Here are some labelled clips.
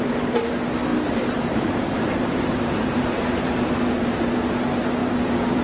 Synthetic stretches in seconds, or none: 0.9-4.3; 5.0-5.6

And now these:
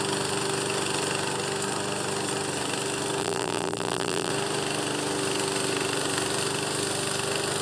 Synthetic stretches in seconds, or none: 3.2-4.3

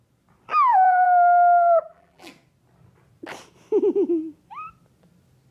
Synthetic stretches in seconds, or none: 0.7-2.3

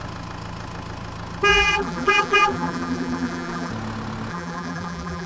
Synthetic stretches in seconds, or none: 1.5-3.7; 4.3-5.3

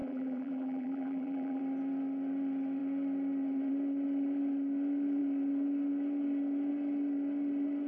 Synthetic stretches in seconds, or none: 0.0-1.6

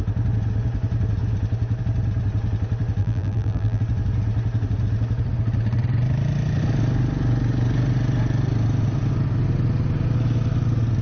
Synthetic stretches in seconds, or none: 3.0-3.8